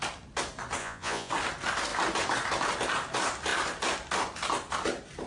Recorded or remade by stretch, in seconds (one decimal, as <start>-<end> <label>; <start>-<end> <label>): 0.0-0.8 recorded; 0.8-1.3 remade; 1.3-5.3 recorded